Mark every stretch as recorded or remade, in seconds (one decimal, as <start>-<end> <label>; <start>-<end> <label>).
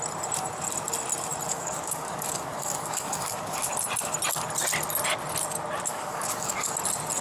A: 0.0-1.5 recorded; 1.5-3.7 remade; 3.7-5.9 recorded; 5.9-6.7 remade; 6.7-7.2 recorded